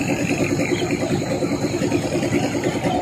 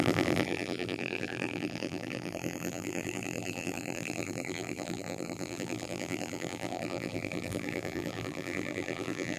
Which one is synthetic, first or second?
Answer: second